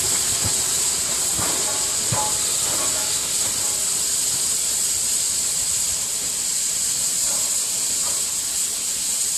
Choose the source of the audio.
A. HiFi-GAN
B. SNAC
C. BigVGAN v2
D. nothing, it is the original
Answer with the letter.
D